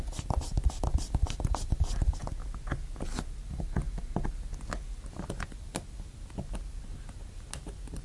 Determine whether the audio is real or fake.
real